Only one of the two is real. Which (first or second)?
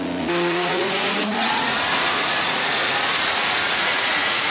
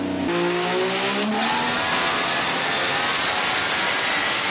second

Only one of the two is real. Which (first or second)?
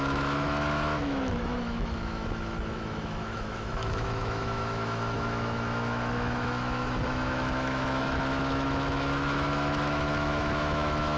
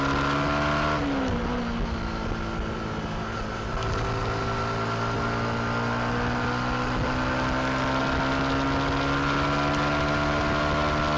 second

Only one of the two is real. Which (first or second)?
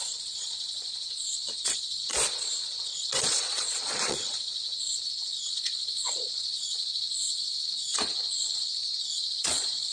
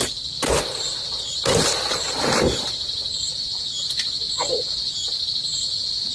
second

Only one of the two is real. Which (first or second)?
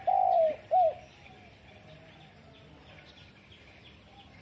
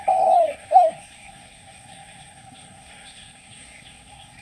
first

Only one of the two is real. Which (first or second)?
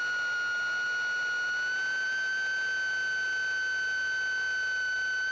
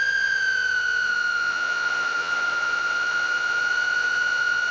first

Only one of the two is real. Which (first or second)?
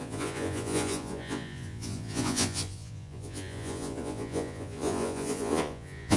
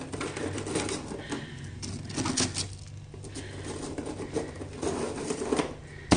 second